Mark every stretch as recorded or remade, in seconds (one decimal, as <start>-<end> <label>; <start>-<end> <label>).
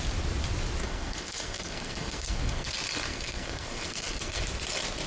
0.0-0.8 recorded; 0.8-2.7 remade; 2.7-3.1 recorded; 3.1-4.4 remade; 4.4-5.1 recorded